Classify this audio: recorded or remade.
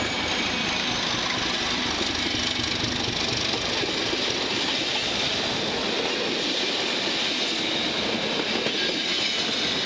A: recorded